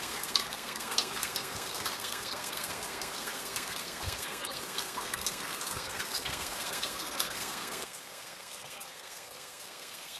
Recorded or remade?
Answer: remade